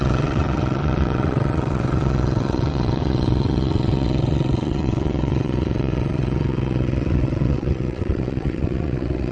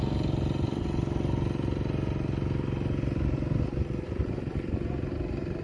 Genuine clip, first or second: second